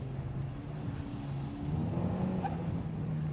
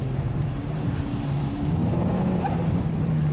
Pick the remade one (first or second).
second